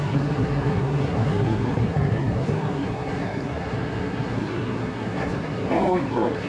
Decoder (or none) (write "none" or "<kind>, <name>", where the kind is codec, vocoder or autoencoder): codec, SNAC